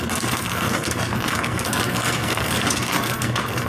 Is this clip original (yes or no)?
no